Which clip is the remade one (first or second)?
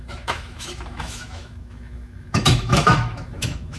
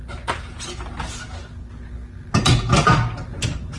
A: first